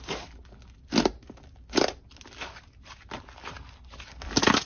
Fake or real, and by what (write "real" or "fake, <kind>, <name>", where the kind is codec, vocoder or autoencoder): real